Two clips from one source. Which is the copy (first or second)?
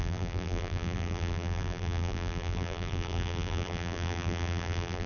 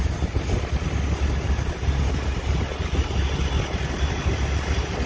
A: first